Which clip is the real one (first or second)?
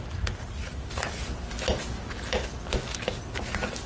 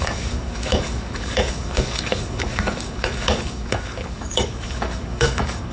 first